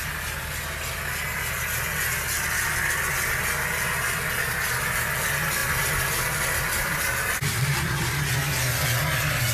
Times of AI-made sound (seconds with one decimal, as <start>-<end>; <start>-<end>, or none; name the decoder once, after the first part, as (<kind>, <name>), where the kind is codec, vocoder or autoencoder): 5.6-8.2 (vocoder, BigVGAN v2)